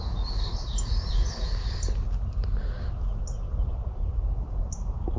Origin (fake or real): real